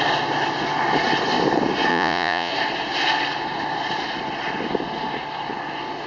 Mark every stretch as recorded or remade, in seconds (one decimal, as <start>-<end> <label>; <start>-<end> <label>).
0.0-1.9 recorded; 1.9-2.5 remade; 2.5-6.1 recorded